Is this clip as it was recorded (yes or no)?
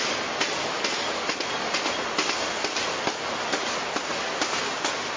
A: yes